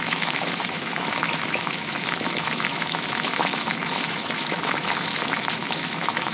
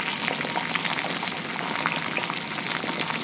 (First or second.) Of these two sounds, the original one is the second